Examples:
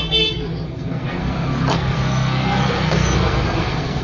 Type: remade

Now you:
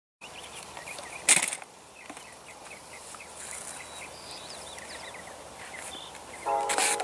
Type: recorded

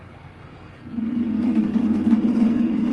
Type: remade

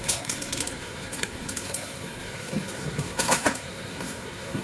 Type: remade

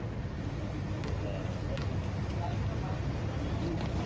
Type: recorded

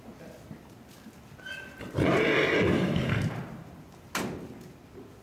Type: recorded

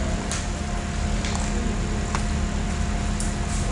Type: recorded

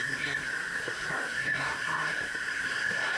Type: remade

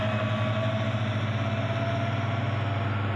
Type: recorded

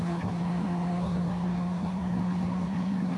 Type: remade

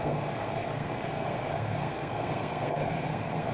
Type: remade